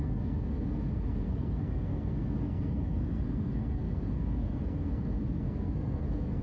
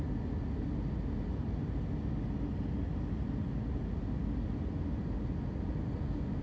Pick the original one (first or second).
second